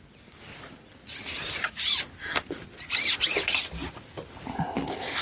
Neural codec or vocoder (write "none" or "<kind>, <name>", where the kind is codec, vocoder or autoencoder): none